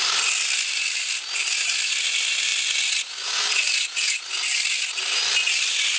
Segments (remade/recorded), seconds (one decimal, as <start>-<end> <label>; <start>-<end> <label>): 0.0-6.0 recorded